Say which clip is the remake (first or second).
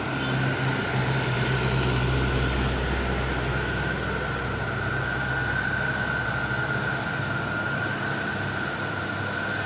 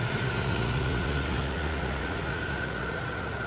second